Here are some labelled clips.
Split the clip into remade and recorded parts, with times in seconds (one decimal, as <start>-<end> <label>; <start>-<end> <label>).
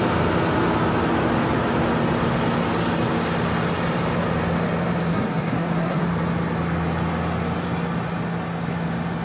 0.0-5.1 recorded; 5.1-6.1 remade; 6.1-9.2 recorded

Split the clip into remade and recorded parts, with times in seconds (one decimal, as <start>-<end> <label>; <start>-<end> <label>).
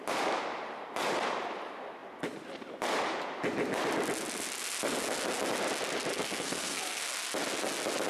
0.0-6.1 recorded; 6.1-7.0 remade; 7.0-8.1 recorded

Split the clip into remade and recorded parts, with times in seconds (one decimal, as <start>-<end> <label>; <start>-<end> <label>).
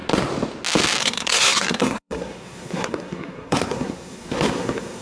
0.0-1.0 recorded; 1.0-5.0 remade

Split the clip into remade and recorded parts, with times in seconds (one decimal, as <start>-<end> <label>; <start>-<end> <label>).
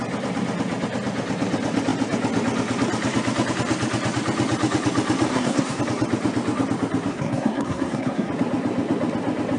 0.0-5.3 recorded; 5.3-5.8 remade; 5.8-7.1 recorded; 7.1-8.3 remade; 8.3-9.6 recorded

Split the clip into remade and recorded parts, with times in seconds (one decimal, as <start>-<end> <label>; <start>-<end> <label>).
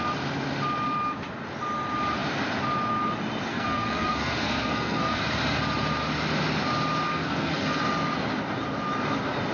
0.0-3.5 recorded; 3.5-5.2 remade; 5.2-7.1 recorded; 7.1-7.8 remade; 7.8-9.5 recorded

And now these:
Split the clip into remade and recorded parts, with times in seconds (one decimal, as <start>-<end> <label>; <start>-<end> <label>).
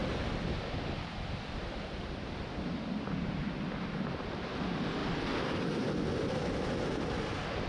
0.0-7.7 recorded